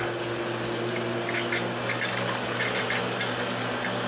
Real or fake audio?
real